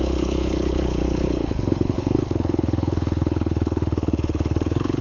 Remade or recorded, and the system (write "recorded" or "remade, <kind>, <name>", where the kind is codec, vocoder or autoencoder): remade, codec, HILCodec